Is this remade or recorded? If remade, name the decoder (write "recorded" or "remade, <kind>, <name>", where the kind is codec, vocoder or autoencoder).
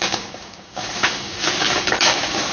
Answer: remade, codec, DAC